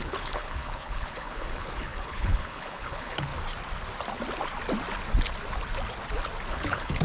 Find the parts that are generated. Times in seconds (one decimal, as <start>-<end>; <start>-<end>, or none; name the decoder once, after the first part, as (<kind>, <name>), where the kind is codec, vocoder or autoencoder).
0.0-3.3 (codec, HILCodec); 6.5-7.0